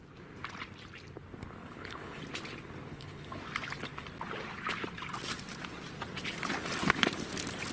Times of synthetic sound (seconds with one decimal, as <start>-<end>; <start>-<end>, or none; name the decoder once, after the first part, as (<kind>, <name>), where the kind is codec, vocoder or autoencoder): 1.6-2.2 (codec, HILCodec); 2.9-3.4